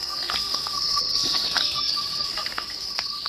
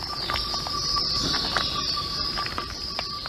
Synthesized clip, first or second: first